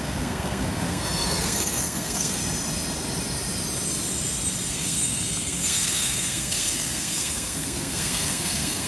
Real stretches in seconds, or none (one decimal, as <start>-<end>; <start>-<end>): 2.4-4.7